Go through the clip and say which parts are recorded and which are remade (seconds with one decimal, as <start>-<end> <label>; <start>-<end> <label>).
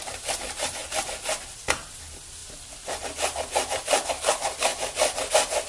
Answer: 0.0-5.7 recorded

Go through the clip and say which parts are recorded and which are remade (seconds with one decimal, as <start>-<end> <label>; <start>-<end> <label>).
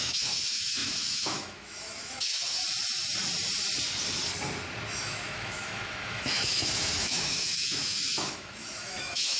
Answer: 0.0-2.6 remade; 2.6-5.0 recorded; 5.0-9.4 remade